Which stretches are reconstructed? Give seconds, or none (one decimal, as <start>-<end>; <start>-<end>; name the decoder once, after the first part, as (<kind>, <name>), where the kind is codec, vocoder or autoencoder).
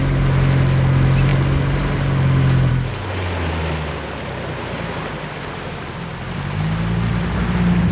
none